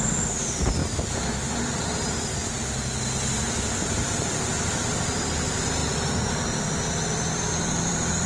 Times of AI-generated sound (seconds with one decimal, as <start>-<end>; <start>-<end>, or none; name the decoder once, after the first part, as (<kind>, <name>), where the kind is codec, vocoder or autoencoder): 0.0-0.8 (vocoder, BigVGAN v2); 1.5-2.4; 3.6-5.8; 7.5-8.3